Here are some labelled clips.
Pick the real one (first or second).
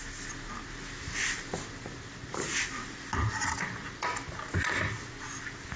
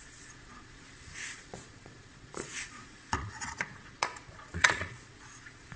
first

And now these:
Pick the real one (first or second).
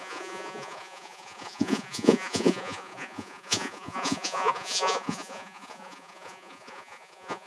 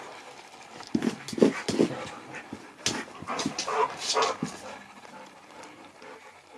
second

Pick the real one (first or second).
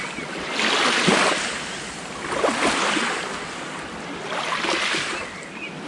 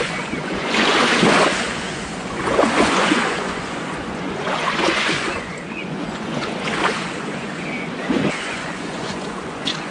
first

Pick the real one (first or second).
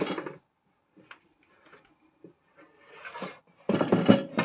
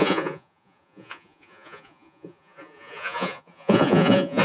first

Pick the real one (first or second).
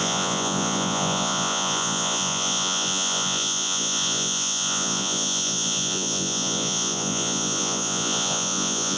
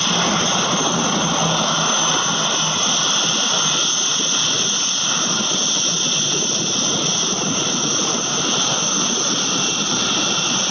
second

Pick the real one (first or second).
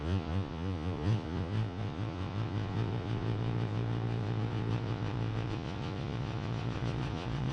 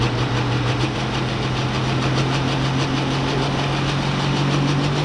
second